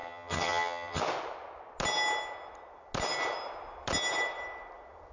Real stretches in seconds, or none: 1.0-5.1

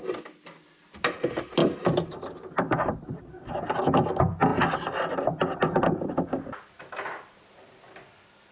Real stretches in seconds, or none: 0.0-1.6; 3.2-4.5; 6.1-8.5

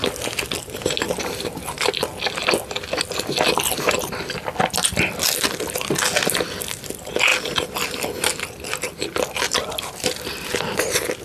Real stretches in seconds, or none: 0.0-11.2